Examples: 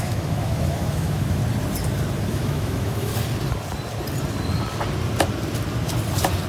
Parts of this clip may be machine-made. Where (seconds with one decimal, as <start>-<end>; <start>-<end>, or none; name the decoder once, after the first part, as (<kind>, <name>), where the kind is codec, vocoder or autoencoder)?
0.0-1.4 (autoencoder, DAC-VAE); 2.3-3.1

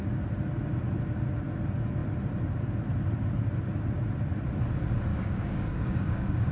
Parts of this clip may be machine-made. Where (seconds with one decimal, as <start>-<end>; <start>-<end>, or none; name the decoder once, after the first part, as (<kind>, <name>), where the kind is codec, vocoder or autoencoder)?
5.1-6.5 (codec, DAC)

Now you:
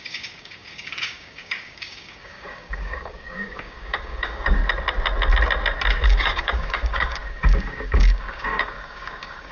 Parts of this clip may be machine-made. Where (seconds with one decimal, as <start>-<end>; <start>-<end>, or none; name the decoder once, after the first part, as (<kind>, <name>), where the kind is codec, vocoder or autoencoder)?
0.0-4.6 (codec, DAC); 6.0-9.5

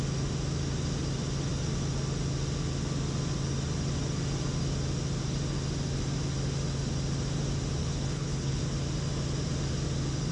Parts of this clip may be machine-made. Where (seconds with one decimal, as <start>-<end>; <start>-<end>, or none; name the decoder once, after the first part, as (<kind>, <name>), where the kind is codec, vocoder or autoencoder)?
7.8-8.6 (codec, HILCodec)

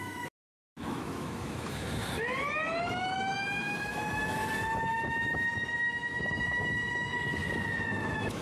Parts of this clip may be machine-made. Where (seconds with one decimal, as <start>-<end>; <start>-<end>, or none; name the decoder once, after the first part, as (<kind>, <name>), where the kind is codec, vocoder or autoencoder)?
0.0-2.0 (autoencoder, DAC-VAE); 2.8-4.4; 4.9-7.1; 7.9-8.4

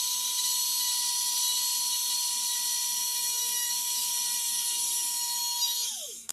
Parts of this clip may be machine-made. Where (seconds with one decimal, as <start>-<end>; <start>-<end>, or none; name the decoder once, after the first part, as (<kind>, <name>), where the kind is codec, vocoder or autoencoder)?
3.0-4.1 (autoencoder, DAC-VAE); 5.1-6.3

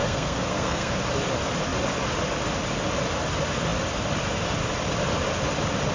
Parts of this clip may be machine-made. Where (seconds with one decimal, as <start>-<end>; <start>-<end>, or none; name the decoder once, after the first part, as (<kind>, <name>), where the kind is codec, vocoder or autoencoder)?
0.0-0.9 (codec, SNAC)